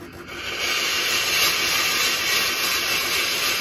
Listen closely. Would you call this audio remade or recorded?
recorded